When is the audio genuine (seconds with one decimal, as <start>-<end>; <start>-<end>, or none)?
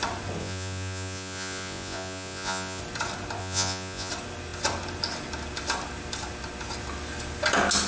0.0-0.4; 2.8-3.4; 4.1-7.9